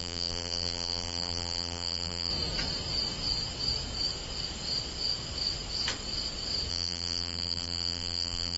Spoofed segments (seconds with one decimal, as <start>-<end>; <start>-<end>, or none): 0.0-2.3; 6.7-8.6